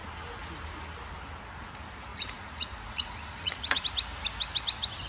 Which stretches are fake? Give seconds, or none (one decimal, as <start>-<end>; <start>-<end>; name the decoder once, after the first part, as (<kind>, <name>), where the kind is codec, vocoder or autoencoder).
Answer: 2.1-3.8 (vocoder, Vocos)